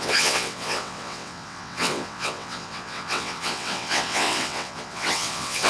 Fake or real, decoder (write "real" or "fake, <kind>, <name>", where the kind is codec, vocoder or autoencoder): fake, vocoder, WaveNeXt